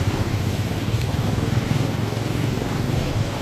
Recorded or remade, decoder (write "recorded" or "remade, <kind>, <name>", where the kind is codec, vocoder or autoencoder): remade, codec, DAC